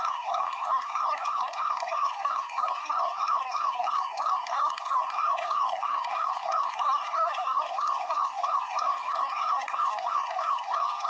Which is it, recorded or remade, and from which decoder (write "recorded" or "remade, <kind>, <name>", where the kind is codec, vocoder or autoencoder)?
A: remade, codec, SNAC